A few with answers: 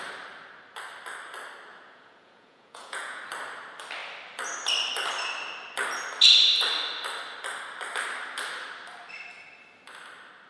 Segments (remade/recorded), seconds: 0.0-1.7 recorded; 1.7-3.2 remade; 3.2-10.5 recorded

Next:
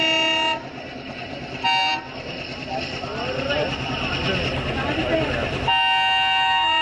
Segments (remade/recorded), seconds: 0.0-6.8 recorded

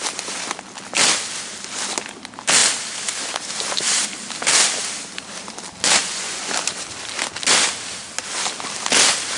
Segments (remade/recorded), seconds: 0.0-6.0 recorded; 6.0-6.5 remade; 6.5-9.4 recorded

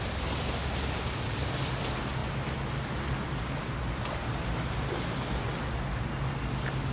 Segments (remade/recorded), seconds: 0.0-6.9 recorded